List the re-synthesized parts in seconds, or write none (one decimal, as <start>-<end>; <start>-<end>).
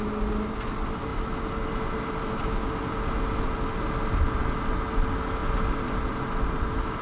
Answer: none